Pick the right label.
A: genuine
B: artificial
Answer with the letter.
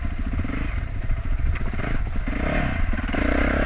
A